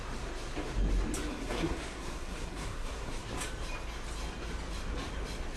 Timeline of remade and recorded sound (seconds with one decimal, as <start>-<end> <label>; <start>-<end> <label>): 0.0-1.3 recorded; 1.3-3.3 remade; 3.3-5.6 recorded